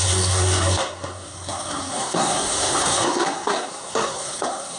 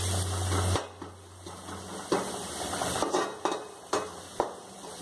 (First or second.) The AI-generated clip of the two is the first